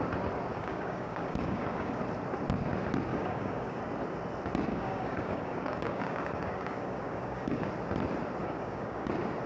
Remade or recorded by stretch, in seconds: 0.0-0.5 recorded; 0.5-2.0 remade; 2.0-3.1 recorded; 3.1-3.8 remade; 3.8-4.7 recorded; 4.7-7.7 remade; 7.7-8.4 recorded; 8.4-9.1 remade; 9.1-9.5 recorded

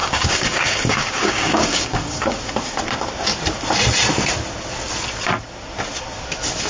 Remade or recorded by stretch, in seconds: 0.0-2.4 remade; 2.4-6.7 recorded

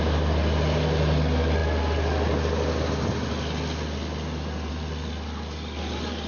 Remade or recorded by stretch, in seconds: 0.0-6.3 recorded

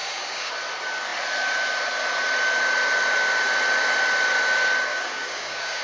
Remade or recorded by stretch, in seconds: 0.0-0.5 remade; 0.5-4.9 recorded; 4.9-5.8 remade

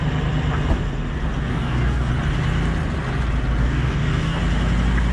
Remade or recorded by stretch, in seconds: 0.0-1.5 recorded; 1.5-2.1 remade; 2.1-3.6 recorded; 3.6-4.4 remade; 4.4-5.1 recorded

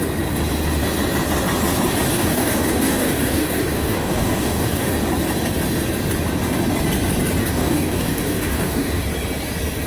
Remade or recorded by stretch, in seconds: 0.0-2.1 recorded; 2.1-4.9 remade; 4.9-7.4 recorded; 7.4-9.0 remade; 9.0-9.9 recorded

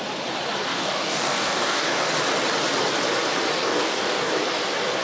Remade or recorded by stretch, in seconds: 0.0-0.7 recorded; 0.7-2.1 remade; 2.1-3.6 recorded; 3.6-4.3 remade; 4.3-5.0 recorded

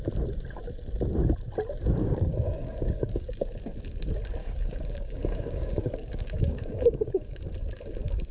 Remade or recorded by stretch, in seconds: 0.0-2.0 recorded; 2.0-3.5 remade; 3.5-4.4 recorded; 4.4-7.4 remade; 7.4-8.3 recorded